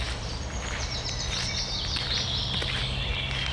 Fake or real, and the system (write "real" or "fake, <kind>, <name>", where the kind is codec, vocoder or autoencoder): real